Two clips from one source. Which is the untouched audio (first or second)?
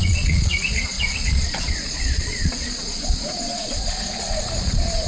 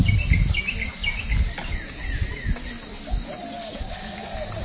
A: second